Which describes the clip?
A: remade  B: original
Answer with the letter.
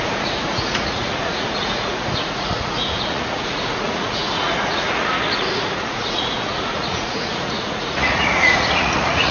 A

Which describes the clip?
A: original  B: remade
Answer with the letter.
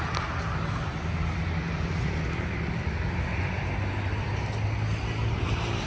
A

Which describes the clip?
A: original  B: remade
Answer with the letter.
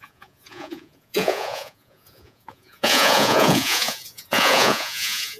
B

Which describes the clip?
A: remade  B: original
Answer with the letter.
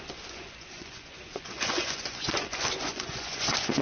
A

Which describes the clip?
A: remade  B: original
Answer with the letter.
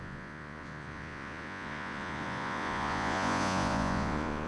A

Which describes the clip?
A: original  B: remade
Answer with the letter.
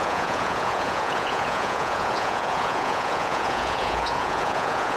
B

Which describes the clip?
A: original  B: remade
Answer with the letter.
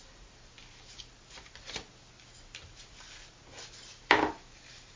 A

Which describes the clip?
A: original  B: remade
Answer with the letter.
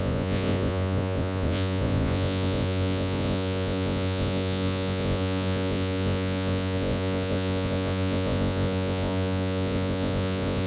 B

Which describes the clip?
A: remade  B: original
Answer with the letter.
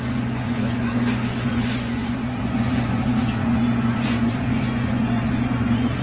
A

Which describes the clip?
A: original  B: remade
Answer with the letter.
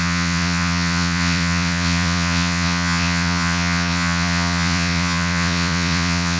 B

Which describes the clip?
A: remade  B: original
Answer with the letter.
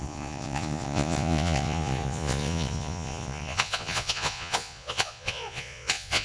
A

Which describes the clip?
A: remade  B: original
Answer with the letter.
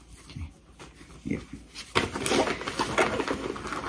B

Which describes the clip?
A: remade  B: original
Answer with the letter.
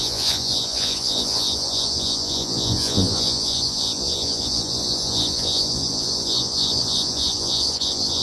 A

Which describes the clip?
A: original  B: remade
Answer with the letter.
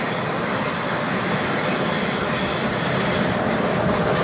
A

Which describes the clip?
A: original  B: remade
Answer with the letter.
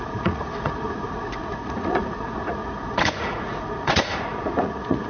B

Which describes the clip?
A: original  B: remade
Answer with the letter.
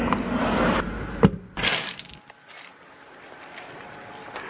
A